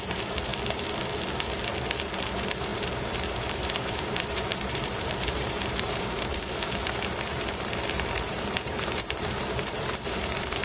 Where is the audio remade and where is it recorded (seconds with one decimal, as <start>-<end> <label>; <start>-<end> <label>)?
0.0-0.5 remade; 0.5-2.2 recorded; 2.2-10.6 remade